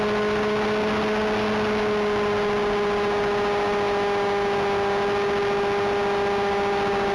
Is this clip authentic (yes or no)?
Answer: yes